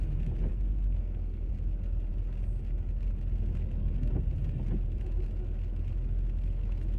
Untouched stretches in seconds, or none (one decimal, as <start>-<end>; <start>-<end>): 0.0-0.5; 1.5-7.0